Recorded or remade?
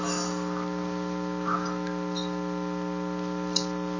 recorded